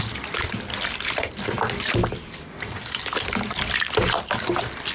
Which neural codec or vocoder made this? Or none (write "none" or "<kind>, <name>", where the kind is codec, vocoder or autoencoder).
none